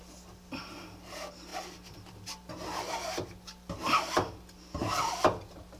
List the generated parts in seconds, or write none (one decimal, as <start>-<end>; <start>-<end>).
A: none